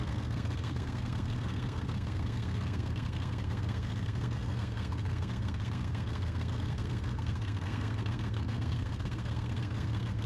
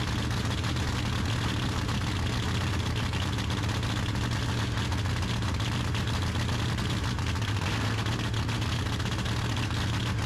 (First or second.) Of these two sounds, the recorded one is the second